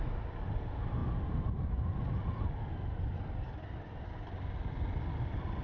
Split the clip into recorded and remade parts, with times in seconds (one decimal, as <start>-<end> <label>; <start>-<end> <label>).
0.0-5.6 recorded